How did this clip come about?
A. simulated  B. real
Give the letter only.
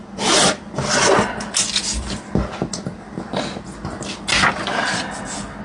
B